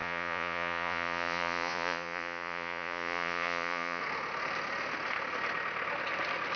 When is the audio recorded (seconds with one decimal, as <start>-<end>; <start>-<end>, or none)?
4.0-6.6

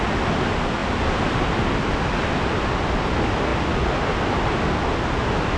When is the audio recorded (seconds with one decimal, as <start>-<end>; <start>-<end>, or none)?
0.0-5.6

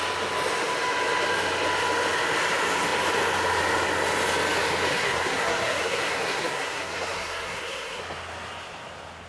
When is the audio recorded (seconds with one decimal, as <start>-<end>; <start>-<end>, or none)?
0.0-4.9; 8.0-9.3

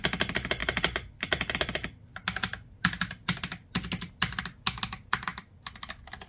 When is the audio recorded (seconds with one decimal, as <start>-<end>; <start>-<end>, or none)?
0.0-6.3

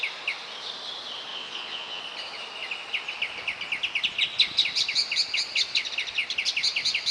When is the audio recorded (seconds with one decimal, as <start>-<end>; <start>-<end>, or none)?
0.0-1.3; 2.0-7.1

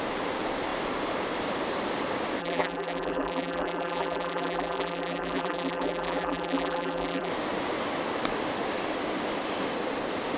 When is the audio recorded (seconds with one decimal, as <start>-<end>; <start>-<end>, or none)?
0.0-2.4; 7.3-10.4